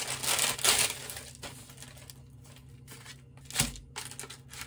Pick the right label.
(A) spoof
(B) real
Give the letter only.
B